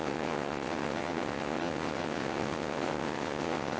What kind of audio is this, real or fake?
fake